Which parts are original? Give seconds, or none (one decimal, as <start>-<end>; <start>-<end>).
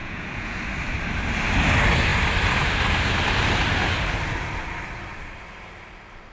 0.6-6.3